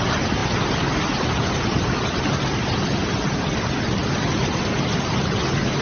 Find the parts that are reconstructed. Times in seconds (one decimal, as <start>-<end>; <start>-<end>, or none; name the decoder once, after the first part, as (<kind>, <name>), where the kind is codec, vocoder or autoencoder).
none